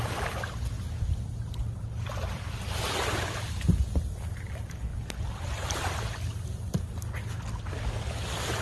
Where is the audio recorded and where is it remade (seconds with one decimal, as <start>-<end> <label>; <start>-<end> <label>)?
0.0-8.6 recorded